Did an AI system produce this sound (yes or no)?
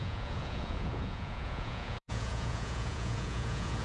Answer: yes